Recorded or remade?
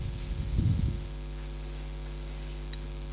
recorded